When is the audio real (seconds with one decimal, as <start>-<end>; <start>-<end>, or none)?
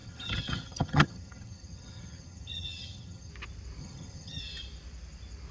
3.3-3.8; 4.4-5.5